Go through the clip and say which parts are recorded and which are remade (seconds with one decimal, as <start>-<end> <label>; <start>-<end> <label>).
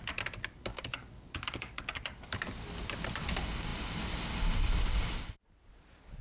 0.0-0.7 recorded; 0.7-1.8 remade; 1.8-6.2 recorded